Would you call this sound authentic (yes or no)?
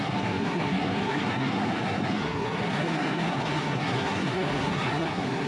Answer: no